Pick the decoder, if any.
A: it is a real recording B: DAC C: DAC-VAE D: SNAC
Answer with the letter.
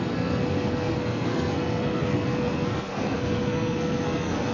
D